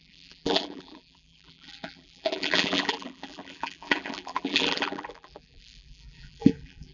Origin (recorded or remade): remade